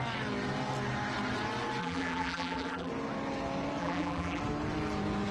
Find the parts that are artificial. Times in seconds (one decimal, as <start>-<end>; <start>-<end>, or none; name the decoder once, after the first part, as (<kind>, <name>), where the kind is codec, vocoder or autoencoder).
1.8-2.9 (vocoder, BigVGAN v2); 3.8-4.4